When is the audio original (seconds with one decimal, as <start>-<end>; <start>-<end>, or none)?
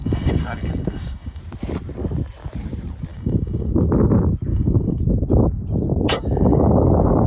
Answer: 1.4-3.1; 3.7-4.5; 5.0-6.1; 6.7-7.3